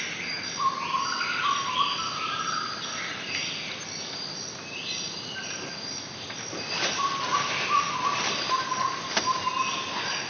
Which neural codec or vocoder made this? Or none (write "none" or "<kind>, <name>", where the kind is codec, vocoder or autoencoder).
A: none